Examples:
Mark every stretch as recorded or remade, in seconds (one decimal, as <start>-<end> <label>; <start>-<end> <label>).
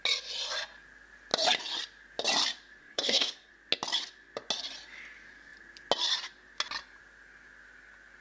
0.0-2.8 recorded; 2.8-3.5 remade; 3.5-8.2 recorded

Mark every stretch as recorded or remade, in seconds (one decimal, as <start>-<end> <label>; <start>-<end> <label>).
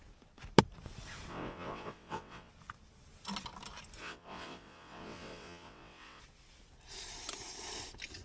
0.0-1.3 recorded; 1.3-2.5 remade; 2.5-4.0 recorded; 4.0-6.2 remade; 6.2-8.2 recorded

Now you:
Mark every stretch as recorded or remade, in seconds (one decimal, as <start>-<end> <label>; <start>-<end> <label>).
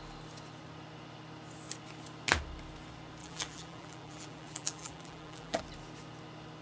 0.0-3.2 recorded; 3.2-5.6 remade; 5.6-6.6 recorded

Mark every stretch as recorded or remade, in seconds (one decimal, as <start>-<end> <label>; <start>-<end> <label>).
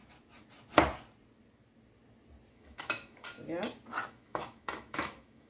0.0-2.5 recorded; 2.5-3.4 remade; 3.4-4.1 recorded; 4.1-5.5 remade